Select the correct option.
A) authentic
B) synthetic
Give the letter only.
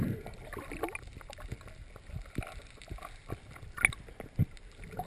A